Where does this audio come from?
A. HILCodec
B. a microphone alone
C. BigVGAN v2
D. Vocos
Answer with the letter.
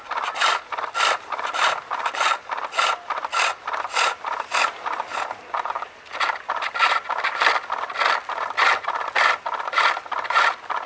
C